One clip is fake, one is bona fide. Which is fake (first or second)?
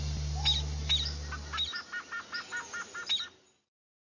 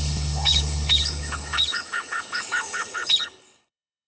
second